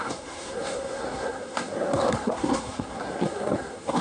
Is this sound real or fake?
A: fake